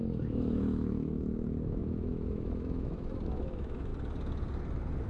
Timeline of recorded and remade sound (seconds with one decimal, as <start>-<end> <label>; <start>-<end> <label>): 0.0-3.9 remade; 3.9-5.1 recorded